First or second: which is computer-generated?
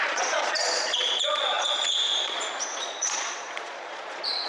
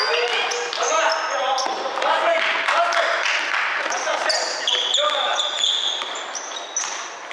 first